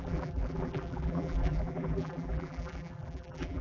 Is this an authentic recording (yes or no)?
no